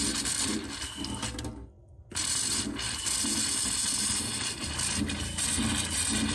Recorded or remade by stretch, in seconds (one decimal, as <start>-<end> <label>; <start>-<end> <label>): 0.0-6.3 recorded